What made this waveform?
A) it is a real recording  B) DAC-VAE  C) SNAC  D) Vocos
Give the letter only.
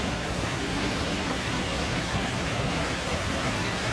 C